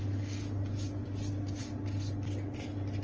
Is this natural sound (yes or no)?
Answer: yes